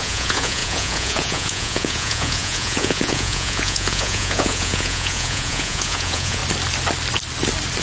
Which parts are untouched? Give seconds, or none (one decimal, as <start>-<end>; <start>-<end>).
6.4-7.8